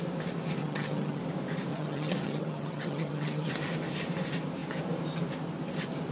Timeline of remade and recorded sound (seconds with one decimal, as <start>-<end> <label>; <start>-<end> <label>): 0.0-0.6 recorded; 0.6-1.2 remade; 1.2-1.7 recorded; 1.7-3.5 remade; 3.5-6.1 recorded